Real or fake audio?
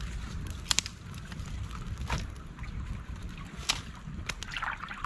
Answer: real